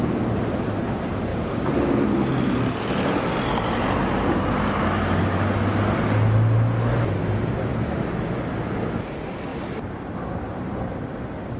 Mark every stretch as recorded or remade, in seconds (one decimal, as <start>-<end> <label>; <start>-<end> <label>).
0.0-1.3 recorded; 1.3-1.8 remade; 1.8-9.5 recorded; 9.5-10.9 remade; 10.9-11.6 recorded